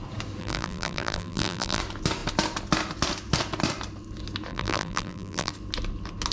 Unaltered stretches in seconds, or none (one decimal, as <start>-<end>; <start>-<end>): 0.0-0.4; 1.8-4.5; 5.5-6.3